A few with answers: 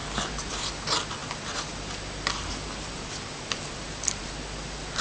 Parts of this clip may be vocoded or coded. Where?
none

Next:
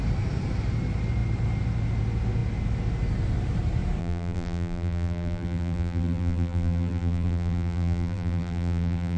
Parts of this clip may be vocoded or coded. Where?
4.0-9.2 (vocoder, BigVGAN v2)

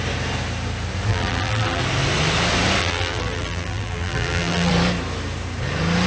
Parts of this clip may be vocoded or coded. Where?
1.1-1.8 (vocoder, BigVGAN v2); 2.8-4.7

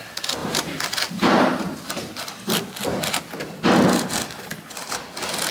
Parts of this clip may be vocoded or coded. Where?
0.4-3.1 (vocoder, BigVGAN v2); 4.5-5.0

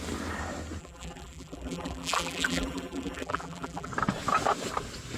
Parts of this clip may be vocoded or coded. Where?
0.8-3.9 (vocoder, BigVGAN v2)

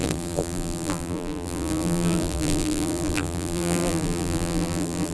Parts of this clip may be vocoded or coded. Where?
0.0-5.1 (vocoder, BigVGAN v2)